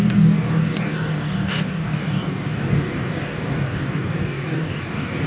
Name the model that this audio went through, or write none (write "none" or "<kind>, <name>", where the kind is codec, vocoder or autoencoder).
codec, DAC